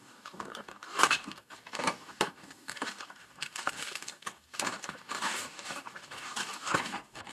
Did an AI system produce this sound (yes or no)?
yes